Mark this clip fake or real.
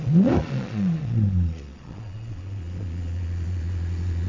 fake